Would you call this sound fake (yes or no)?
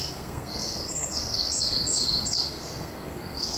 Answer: yes